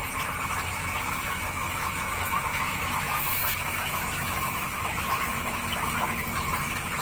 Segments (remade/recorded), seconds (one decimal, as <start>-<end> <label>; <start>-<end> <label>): 0.0-0.7 recorded; 0.7-7.0 remade